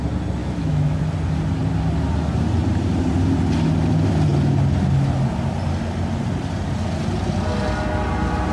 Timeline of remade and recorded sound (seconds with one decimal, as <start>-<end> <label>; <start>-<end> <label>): 0.0-0.4 recorded; 0.4-1.0 remade; 1.0-8.5 recorded